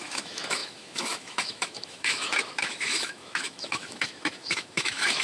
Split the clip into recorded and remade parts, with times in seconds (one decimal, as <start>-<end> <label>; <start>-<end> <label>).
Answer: 0.0-5.2 remade